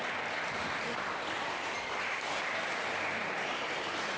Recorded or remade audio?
recorded